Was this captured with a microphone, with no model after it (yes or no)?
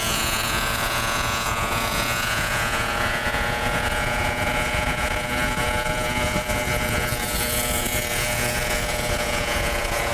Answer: no